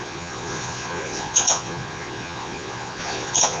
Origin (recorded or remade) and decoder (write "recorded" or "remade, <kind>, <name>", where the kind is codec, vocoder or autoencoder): remade, vocoder, Vocos